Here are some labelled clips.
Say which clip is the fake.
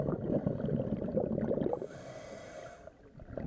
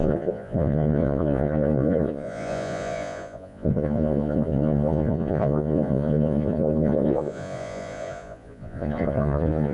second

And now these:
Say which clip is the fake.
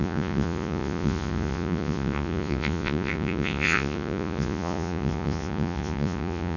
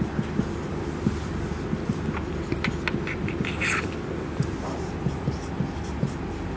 first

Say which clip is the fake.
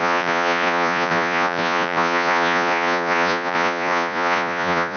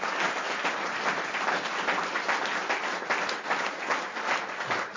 first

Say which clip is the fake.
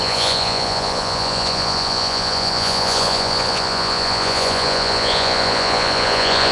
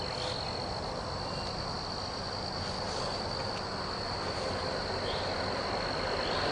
first